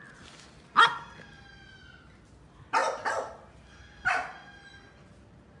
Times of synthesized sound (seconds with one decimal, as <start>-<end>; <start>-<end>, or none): none